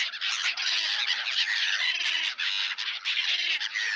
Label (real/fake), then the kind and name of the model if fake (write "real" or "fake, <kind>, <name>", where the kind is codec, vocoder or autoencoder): real